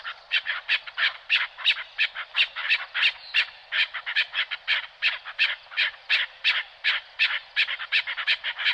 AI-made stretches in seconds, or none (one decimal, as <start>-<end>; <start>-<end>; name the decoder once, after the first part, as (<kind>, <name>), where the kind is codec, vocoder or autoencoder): none